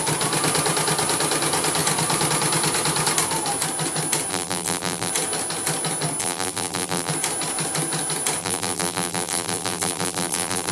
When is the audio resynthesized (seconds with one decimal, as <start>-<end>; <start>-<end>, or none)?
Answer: 4.3-5.1; 6.2-7.1; 8.4-10.7